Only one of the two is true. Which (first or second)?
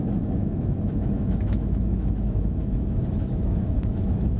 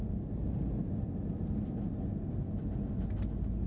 second